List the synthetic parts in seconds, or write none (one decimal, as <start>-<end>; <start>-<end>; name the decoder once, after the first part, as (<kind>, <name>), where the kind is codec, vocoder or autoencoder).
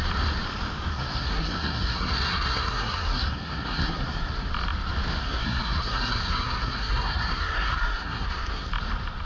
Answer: 0.9-4.5 (codec, SNAC); 5.2-8.7